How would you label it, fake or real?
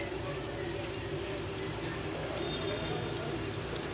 real